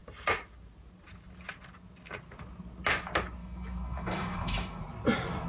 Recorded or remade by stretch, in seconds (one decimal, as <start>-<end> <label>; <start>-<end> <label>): 0.0-3.4 recorded; 3.4-4.8 remade; 4.8-5.5 recorded